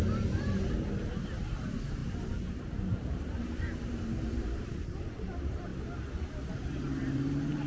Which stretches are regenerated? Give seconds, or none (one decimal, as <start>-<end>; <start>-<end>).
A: 0.0-2.0; 2.6-5.7; 6.5-7.7